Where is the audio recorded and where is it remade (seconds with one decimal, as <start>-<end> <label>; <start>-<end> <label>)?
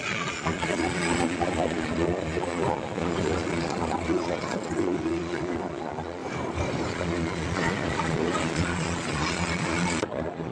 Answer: 0.0-6.2 remade; 6.2-6.9 recorded; 6.9-10.5 remade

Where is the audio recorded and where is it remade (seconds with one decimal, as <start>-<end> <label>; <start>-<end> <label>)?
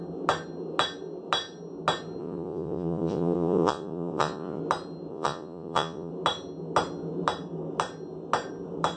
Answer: 0.0-2.2 recorded; 2.2-4.6 remade; 4.6-5.1 recorded; 5.1-6.1 remade; 6.1-9.0 recorded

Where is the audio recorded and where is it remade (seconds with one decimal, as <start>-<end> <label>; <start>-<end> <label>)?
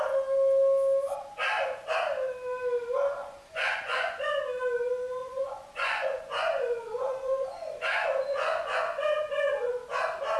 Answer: 0.0-3.2 recorded; 3.2-4.4 remade; 4.4-5.2 recorded; 5.2-9.7 remade; 9.7-10.4 recorded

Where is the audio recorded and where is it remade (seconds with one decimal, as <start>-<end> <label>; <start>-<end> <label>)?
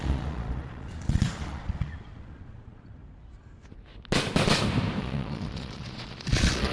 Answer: 0.0-3.0 remade; 3.0-5.0 recorded; 5.0-6.7 remade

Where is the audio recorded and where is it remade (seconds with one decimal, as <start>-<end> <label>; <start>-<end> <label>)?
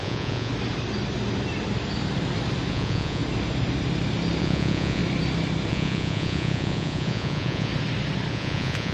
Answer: 0.0-0.5 remade; 0.5-2.7 recorded; 2.7-3.2 remade; 3.2-4.4 recorded; 4.4-5.0 remade; 5.0-5.7 recorded; 5.7-7.7 remade; 7.7-8.3 recorded; 8.3-8.9 remade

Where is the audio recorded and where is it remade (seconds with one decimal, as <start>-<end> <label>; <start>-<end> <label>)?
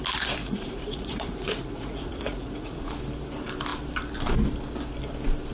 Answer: 0.0-0.4 recorded; 0.4-2.9 remade; 2.9-5.5 recorded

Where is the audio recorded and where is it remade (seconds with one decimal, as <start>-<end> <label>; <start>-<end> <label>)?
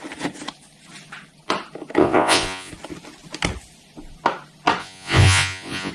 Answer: 0.0-2.0 recorded; 2.0-2.7 remade; 2.7-4.8 recorded; 4.8-5.9 remade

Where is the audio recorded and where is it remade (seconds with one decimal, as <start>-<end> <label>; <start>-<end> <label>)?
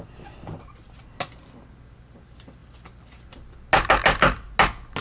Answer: 0.0-5.0 recorded